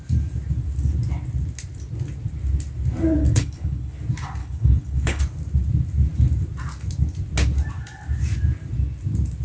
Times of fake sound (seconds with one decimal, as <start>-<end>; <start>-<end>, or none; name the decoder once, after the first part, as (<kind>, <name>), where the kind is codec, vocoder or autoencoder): 3.2-3.9 (codec, HILCodec); 4.4-5.2